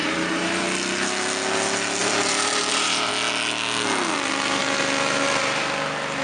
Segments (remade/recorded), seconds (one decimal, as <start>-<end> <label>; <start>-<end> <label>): 0.0-0.6 remade; 0.6-2.0 recorded; 2.0-3.1 remade; 3.1-6.2 recorded